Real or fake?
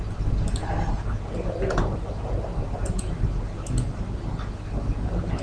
real